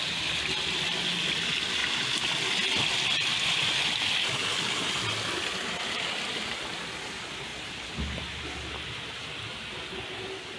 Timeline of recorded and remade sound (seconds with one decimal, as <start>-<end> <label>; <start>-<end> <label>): 0.0-10.6 recorded